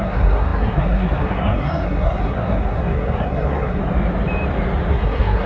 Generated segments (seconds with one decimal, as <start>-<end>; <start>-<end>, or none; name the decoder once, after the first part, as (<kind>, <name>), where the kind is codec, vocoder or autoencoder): 0.0-3.8 (codec, SNAC); 4.9-5.5